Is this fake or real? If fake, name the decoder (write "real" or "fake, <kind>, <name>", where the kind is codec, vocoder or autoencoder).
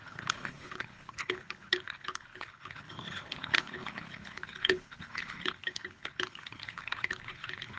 fake, codec, HILCodec